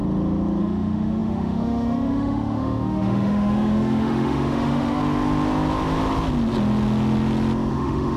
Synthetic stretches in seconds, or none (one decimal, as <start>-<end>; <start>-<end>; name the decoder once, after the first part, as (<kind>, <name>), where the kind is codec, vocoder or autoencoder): 0.6-5.0 (autoencoder, DAC-VAE); 7.7-8.2